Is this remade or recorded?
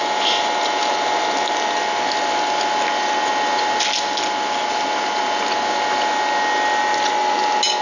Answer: recorded